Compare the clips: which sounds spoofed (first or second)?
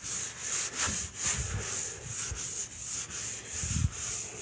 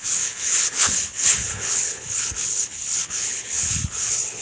second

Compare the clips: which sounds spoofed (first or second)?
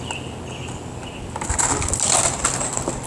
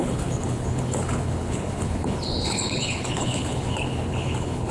second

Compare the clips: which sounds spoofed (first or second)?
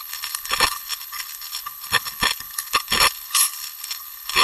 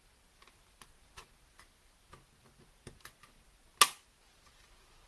first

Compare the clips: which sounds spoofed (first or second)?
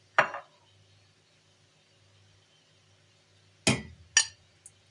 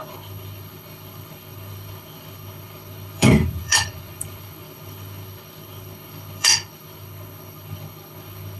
second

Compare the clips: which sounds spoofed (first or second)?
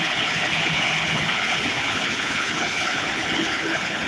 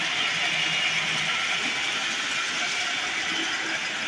first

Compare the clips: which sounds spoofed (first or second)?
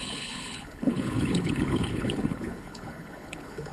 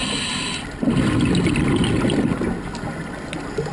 first